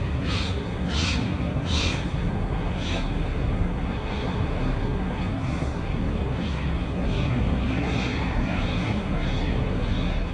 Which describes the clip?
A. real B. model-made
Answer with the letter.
B